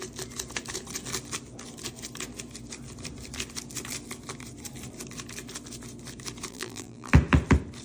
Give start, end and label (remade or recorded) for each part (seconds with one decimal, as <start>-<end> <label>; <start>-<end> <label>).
0.0-6.5 recorded; 6.5-7.1 remade; 7.1-7.8 recorded